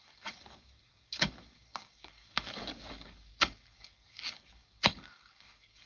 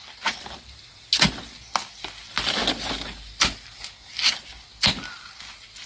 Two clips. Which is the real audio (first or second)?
second